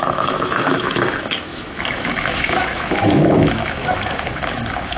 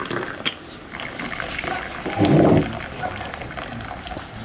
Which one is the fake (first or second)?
first